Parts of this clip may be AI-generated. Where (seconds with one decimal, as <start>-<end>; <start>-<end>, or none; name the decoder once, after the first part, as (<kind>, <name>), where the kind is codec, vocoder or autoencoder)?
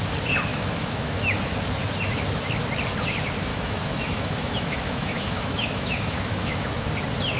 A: 0.5-1.4 (autoencoder, DAC-VAE); 3.5-6.9